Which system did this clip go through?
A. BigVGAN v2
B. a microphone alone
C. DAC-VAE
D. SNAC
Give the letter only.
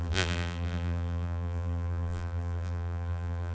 A